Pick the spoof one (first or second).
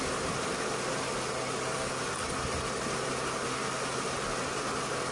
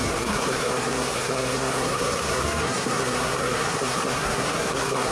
second